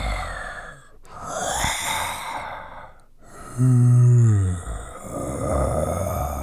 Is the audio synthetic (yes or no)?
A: no